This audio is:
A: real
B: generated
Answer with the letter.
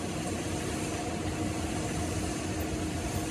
A